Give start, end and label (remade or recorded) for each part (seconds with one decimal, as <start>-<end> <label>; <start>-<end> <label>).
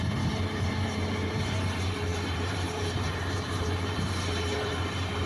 0.0-5.3 remade